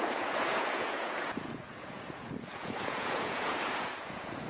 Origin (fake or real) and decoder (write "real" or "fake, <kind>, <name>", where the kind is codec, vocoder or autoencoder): fake, vocoder, Vocos